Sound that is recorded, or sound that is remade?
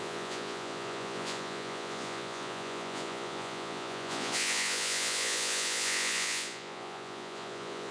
remade